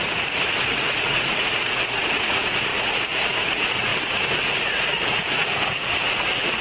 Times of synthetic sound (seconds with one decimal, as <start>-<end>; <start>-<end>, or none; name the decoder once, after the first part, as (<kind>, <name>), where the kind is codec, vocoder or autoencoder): 0.0-3.9 (vocoder, Vocos); 4.4-6.6